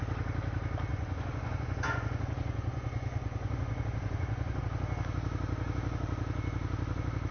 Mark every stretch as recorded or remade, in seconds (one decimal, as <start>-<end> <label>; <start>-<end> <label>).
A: 0.0-0.9 recorded; 0.9-4.6 remade; 4.6-7.3 recorded